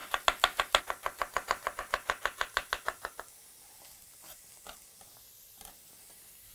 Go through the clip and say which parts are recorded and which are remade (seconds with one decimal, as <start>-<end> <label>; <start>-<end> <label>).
0.0-6.5 recorded